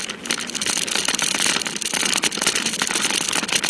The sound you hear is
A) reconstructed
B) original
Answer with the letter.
B